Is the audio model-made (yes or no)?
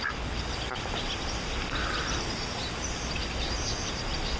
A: no